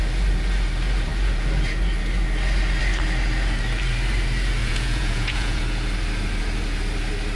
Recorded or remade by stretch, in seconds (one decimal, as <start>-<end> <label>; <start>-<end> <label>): 0.0-4.6 recorded; 4.6-5.6 remade; 5.6-7.4 recorded